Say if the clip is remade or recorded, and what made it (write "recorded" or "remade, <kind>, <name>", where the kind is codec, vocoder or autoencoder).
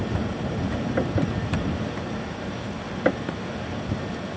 remade, vocoder, BigVGAN v2